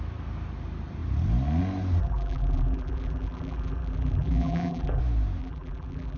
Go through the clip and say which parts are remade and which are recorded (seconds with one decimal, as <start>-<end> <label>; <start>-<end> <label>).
0.0-2.0 recorded; 2.0-5.0 remade; 5.0-5.4 recorded; 5.4-6.2 remade